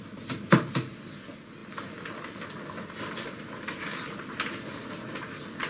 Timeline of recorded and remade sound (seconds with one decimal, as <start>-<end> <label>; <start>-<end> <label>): 0.0-5.7 recorded